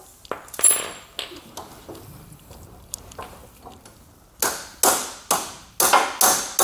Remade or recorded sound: recorded